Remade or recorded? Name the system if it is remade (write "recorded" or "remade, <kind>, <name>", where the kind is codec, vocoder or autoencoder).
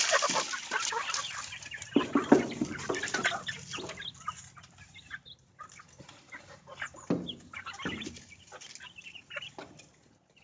recorded